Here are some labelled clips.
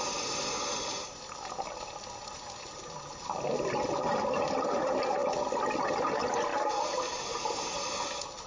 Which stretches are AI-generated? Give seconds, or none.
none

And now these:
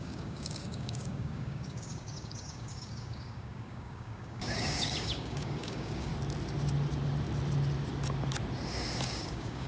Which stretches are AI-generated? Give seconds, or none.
0.0-6.1 (codec, DAC); 9.0-9.7

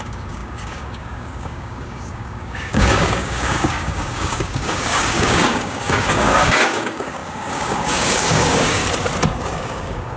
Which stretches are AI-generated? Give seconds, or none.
0.0-8.8 (codec, DAC); 9.4-10.2

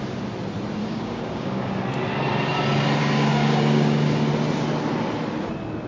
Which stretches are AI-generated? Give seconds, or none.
0.8-1.8 (codec, DAC); 3.0-4.3

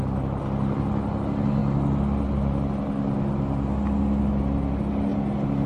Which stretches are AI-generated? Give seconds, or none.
none